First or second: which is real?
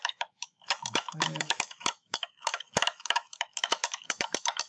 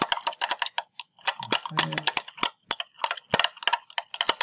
second